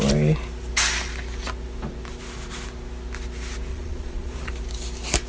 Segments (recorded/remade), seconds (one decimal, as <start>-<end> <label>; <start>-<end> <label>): 0.0-3.7 recorded; 3.7-4.5 remade; 4.5-5.3 recorded

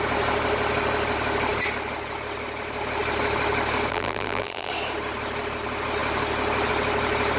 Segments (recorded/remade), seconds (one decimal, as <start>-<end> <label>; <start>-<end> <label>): 0.0-3.9 recorded; 3.9-4.7 remade; 4.7-7.4 recorded

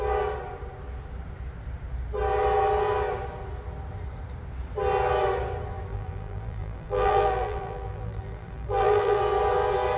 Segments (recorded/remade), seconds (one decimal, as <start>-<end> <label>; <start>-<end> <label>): 0.0-5.9 recorded; 5.9-9.2 remade; 9.2-10.0 recorded

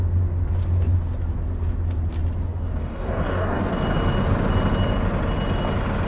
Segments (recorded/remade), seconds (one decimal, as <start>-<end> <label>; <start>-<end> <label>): 0.0-2.8 recorded; 2.8-3.6 remade; 3.6-6.1 recorded

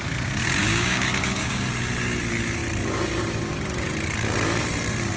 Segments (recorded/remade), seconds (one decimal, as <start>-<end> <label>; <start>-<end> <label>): 0.0-0.6 recorded; 0.6-1.6 remade; 1.6-5.2 recorded

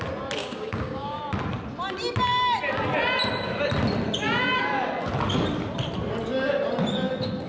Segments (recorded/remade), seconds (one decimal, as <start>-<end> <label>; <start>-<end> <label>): 0.0-0.4 recorded; 0.4-1.2 remade; 1.2-7.5 recorded

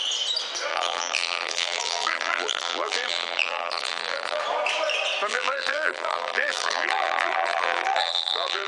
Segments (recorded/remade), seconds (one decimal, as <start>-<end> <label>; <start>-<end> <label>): 0.0-0.7 recorded; 0.7-4.4 remade; 4.4-5.3 recorded; 5.3-8.7 remade

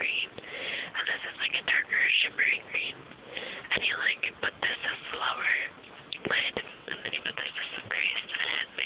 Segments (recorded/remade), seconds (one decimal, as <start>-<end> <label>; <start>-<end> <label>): 0.0-6.7 recorded; 6.7-8.9 remade